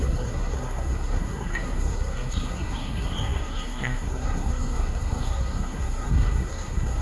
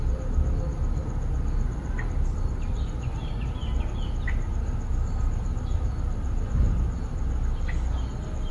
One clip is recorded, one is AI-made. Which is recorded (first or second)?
second